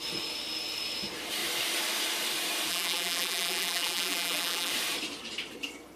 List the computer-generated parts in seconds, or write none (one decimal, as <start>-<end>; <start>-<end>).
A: 2.7-4.7